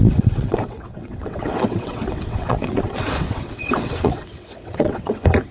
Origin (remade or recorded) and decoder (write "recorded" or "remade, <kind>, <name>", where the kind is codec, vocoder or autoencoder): remade, vocoder, WaveNeXt